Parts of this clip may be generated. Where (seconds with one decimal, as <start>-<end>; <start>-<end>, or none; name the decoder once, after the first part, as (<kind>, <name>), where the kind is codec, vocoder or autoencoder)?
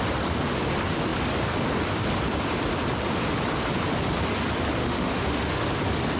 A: 4.8-5.7 (autoencoder, DAC-VAE)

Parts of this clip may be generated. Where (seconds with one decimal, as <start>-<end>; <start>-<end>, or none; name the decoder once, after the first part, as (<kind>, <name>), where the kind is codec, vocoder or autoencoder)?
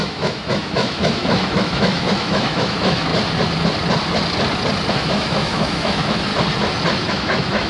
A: 0.0-3.1 (autoencoder, DAC-VAE); 4.9-6.3; 7.1-7.7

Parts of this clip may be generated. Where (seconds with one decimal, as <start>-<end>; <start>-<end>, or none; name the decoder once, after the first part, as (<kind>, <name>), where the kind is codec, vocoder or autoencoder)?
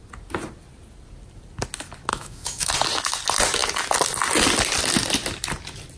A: 2.1-2.7 (autoencoder, DAC-VAE)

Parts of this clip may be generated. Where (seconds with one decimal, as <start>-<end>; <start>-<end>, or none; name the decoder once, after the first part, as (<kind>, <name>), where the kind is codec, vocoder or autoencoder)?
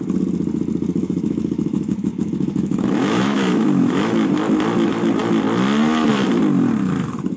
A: 1.0-4.3 (autoencoder, DAC-VAE)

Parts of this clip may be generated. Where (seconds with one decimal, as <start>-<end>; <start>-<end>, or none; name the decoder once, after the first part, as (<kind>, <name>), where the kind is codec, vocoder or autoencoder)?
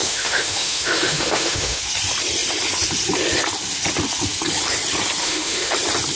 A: 0.0-1.8 (autoencoder, DAC-VAE); 5.2-5.7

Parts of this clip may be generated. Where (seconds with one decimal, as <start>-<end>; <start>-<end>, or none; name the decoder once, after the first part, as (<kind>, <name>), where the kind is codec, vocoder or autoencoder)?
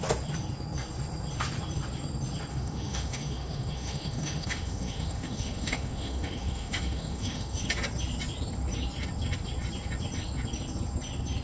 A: 2.5-7.6 (autoencoder, DAC-VAE)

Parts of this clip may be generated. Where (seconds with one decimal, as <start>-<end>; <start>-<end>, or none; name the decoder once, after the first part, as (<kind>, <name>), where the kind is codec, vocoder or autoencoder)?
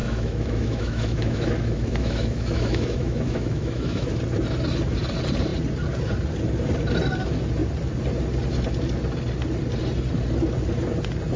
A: 0.0-4.2 (autoencoder, DAC-VAE)